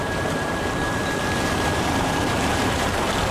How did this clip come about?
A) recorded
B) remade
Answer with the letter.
B